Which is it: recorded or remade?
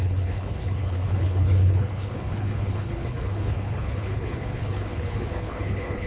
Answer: remade